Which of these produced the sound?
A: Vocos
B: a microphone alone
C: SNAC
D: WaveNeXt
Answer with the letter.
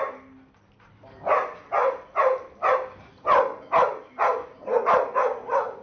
B